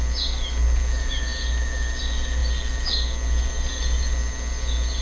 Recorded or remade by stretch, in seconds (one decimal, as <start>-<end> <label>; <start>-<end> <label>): 0.0-5.0 recorded